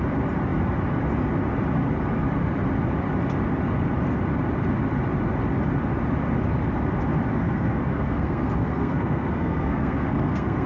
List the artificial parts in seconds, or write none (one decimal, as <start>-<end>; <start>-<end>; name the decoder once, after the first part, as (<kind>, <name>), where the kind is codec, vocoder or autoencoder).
7.4-10.7 (codec, SNAC)